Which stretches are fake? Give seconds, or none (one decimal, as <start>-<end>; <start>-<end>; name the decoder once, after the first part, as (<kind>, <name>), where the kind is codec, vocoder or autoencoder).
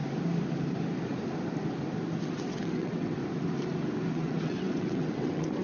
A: 2.2-3.2 (vocoder, WaveNeXt); 4.1-5.6